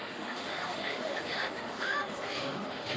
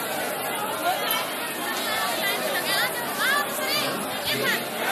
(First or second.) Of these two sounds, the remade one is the first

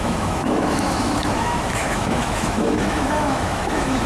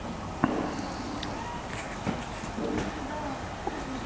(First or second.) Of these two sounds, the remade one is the first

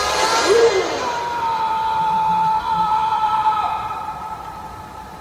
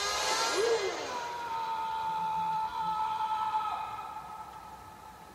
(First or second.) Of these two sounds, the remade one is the first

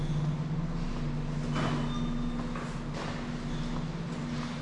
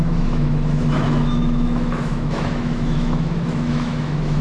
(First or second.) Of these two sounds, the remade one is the second